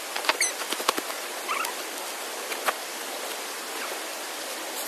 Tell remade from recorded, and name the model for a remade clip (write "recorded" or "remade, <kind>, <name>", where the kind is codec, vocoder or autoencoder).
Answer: recorded